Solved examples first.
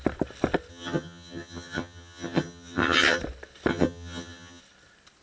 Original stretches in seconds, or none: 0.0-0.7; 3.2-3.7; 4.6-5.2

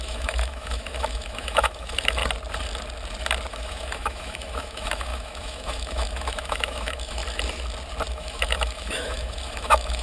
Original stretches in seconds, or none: 2.2-3.5; 7.2-8.1

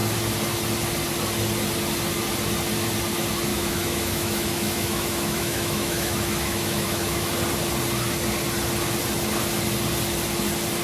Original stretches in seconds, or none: 0.0-3.5; 7.3-10.8